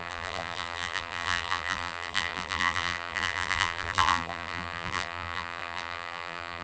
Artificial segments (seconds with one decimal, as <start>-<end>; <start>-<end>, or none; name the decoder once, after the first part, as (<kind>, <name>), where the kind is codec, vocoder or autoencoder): 0.0-6.6 (vocoder, BigVGAN v2)